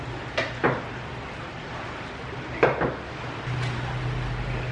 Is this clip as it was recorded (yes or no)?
yes